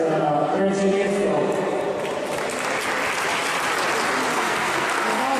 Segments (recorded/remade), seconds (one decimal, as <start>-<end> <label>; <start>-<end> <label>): 0.0-1.3 remade; 1.3-4.3 recorded; 4.3-5.4 remade